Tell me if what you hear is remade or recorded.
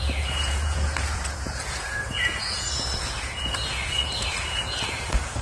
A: remade